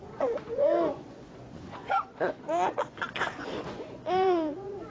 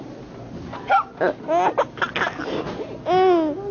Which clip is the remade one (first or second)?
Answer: first